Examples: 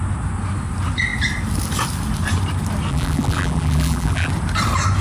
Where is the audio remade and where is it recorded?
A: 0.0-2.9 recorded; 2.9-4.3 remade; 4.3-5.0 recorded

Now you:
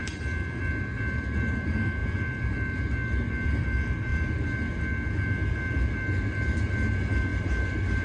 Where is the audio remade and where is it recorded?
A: 0.0-7.3 recorded; 7.3-8.0 remade

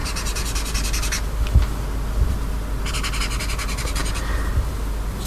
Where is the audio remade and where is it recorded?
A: 0.0-5.3 recorded

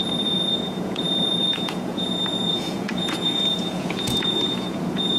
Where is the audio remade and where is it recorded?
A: 0.0-5.2 remade